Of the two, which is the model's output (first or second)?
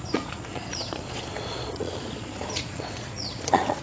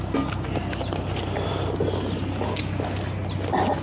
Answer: first